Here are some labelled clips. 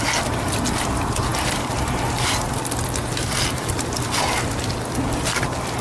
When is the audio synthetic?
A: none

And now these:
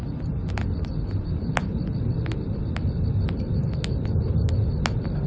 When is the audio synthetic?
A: none

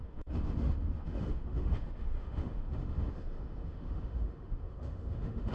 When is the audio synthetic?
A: 0.0-5.5 (autoencoder, DAC-VAE)

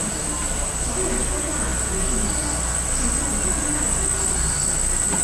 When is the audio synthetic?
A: none

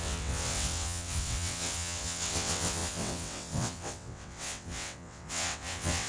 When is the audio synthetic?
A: 0.0-6.1 (vocoder, WaveNeXt)

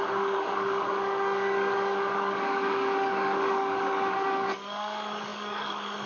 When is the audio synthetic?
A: 0.0-6.1 (codec, DAC)